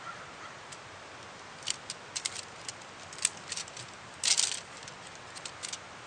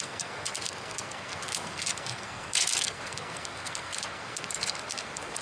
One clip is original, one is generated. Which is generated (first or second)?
second